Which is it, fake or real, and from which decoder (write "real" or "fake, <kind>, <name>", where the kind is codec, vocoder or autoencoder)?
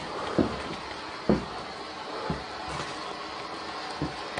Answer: real